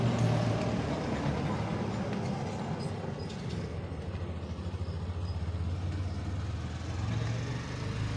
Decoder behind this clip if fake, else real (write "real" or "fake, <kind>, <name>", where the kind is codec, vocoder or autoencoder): real